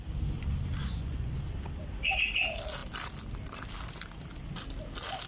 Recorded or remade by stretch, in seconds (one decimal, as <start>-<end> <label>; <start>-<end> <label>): 0.0-0.8 recorded; 0.8-1.4 remade; 1.4-5.3 recorded